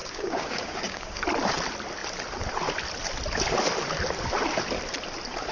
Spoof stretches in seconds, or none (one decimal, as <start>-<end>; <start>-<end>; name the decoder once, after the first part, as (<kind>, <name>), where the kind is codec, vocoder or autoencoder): 0.0-1.2 (codec, DAC)

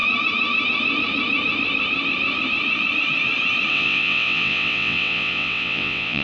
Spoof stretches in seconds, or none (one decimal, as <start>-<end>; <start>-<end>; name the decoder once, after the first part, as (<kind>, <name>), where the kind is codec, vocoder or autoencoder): 3.7-6.2 (vocoder, WaveNeXt)

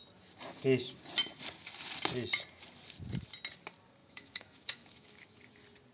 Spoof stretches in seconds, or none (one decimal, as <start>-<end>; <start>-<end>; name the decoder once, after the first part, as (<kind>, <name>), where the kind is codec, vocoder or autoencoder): 4.0-5.5 (autoencoder, DAC-VAE)

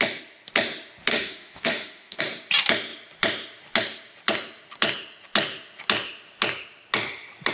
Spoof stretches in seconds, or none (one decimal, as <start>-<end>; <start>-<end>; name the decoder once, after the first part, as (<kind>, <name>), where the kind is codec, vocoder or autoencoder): 1.1-2.2 (autoencoder, DAC-VAE)

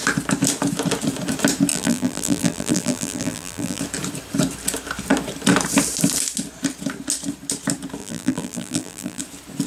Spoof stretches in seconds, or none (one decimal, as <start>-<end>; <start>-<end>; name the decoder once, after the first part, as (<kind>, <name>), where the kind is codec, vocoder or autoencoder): 1.7-3.8 (vocoder, BigVGAN v2); 8.0-9.2